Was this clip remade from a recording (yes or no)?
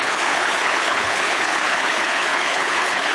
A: yes